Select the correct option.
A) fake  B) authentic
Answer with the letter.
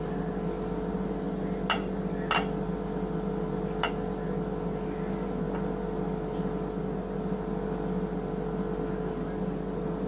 B